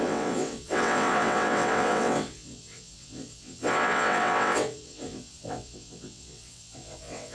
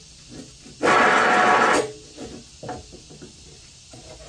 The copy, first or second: first